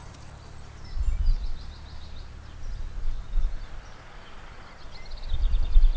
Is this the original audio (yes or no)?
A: yes